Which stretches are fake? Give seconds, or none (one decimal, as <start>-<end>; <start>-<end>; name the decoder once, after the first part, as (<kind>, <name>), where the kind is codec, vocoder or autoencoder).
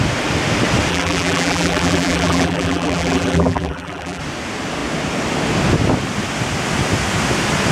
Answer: 0.9-4.2 (vocoder, BigVGAN v2)